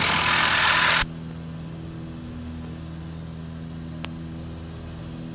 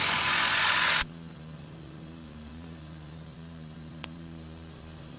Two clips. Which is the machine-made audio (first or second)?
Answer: second